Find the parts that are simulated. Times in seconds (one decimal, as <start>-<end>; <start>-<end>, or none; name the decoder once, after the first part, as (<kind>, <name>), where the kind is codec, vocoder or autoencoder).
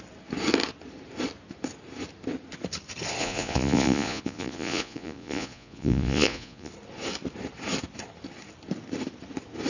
3.2-6.7 (vocoder, Vocos)